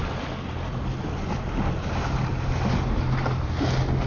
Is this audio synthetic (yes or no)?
no